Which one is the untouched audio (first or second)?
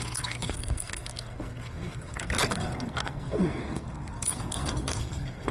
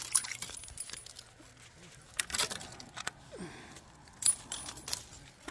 second